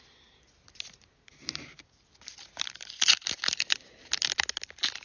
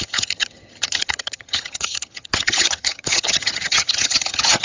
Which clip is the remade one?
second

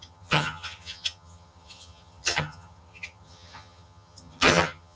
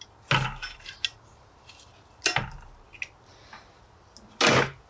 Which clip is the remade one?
first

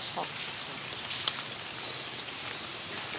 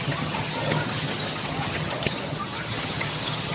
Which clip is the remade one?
second